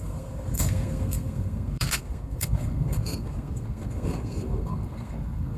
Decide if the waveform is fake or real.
fake